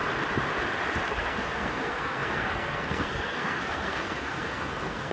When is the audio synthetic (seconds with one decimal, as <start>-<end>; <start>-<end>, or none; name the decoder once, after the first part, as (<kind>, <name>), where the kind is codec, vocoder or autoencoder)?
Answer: 1.1-5.1 (codec, SNAC)